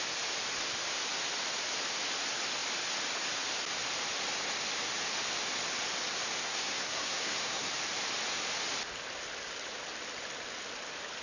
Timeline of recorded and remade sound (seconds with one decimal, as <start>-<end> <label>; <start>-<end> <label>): 0.0-6.4 recorded; 6.4-7.7 remade; 7.7-11.2 recorded